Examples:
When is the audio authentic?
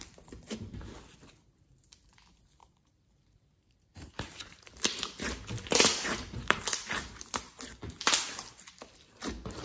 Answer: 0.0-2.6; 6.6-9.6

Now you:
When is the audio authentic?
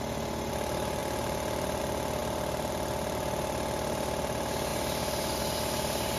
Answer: 0.0-1.0; 1.8-6.2